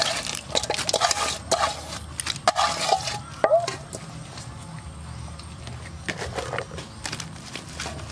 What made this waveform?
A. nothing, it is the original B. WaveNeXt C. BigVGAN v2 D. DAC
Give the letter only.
A